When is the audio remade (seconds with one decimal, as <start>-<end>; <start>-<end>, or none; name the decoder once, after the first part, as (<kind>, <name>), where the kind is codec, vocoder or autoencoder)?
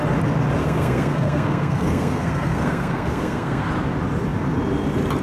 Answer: 0.6-3.7 (codec, SNAC)